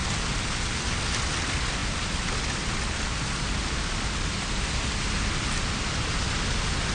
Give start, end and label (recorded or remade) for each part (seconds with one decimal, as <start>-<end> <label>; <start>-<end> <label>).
0.0-1.0 remade; 1.0-6.9 recorded